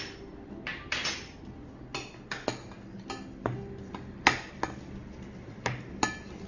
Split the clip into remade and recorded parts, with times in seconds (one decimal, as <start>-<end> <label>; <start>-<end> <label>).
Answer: 0.0-6.5 recorded

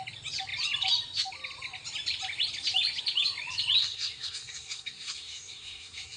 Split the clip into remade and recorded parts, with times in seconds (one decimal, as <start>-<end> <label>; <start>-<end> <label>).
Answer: 0.0-3.8 recorded; 3.8-6.2 remade